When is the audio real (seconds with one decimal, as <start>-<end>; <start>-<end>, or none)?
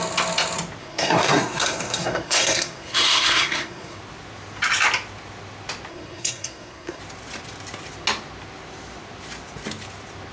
0.0-0.8; 4.0-5.9; 7.0-10.3